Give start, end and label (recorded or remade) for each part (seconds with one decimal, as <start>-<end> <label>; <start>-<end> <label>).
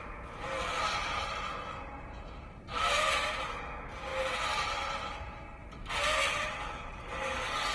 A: 0.0-1.0 recorded; 1.0-2.2 remade; 2.2-4.1 recorded; 4.1-5.0 remade; 5.0-7.7 recorded